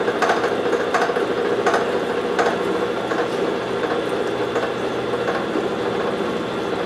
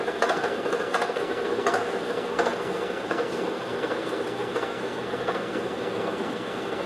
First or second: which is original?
first